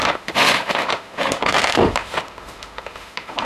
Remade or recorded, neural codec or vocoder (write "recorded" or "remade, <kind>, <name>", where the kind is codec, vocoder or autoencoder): remade, autoencoder, DAC-VAE